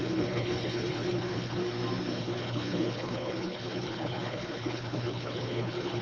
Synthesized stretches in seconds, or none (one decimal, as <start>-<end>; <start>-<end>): 0.0-1.6; 2.1-6.0